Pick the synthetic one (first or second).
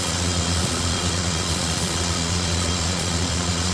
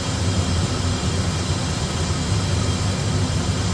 first